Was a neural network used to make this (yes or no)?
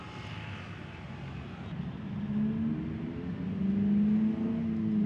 no